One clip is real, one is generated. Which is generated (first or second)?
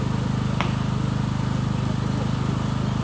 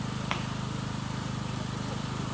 second